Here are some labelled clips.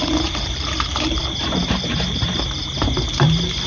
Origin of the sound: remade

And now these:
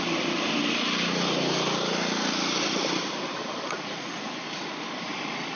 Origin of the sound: recorded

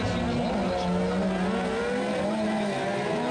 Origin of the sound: recorded